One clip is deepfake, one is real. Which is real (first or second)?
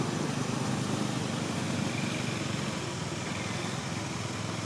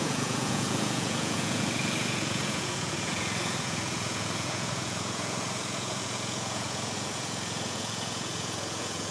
first